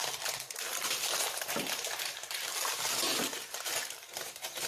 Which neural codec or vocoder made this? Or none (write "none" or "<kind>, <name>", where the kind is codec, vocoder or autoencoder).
vocoder, BigVGAN v2